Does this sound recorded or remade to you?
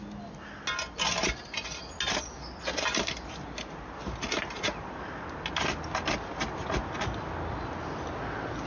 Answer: recorded